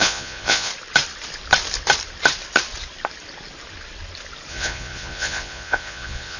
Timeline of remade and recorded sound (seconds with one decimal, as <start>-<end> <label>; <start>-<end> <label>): 0.0-0.7 remade; 0.7-4.5 recorded; 4.5-6.4 remade